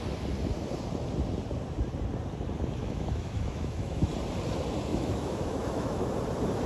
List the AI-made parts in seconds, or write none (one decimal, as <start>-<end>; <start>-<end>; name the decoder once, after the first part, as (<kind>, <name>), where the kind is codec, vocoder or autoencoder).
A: 2.8-4.1 (autoencoder, DAC-VAE); 4.9-6.1